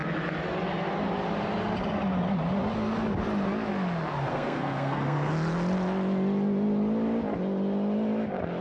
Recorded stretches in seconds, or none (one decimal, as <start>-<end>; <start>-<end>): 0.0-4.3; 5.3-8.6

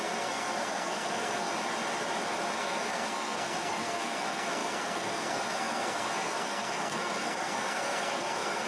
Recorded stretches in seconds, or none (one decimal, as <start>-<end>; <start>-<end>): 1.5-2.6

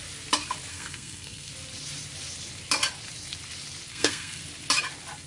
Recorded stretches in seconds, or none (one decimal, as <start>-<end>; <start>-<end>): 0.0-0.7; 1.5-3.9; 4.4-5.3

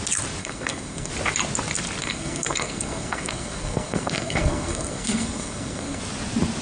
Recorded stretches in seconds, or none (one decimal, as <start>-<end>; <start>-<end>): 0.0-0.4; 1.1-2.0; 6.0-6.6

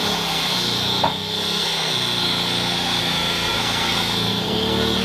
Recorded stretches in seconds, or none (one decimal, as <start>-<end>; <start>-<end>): none

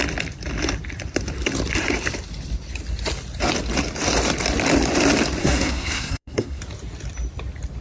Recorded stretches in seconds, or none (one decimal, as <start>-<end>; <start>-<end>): 0.0-5.4; 6.6-7.8